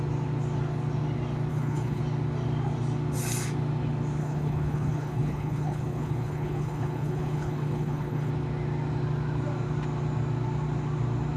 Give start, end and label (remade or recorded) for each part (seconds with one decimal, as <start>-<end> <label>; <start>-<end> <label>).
0.0-1.5 recorded; 1.5-2.0 remade; 2.0-4.2 recorded; 4.2-8.3 remade; 8.3-11.4 recorded